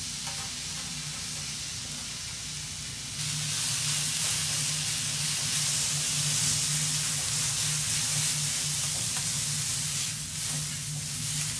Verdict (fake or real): real